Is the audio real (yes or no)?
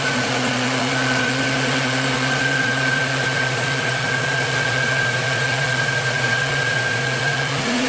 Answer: no